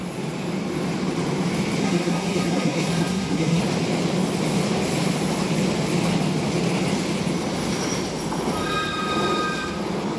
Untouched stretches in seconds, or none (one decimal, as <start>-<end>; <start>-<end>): 0.0-1.8; 3.6-10.2